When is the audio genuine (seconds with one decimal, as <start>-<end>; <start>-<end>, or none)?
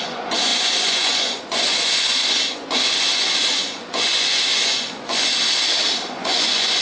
5.3-6.1